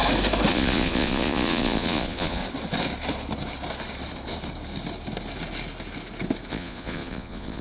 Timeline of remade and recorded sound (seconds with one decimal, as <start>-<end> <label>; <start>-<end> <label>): 0.0-0.5 recorded; 0.5-2.4 remade; 2.4-6.5 recorded; 6.5-7.6 remade